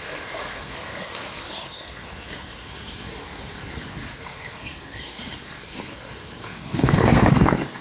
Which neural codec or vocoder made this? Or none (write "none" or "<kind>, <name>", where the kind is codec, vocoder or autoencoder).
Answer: codec, SNAC